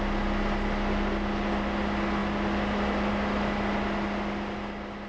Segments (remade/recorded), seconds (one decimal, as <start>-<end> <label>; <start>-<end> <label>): 0.0-5.1 recorded